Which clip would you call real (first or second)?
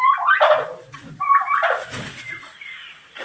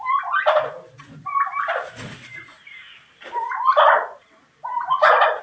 second